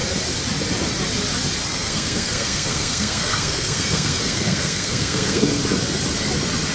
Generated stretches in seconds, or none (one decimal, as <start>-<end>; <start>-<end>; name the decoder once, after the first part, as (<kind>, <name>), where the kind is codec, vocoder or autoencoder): 1.6-5.6 (codec, SNAC)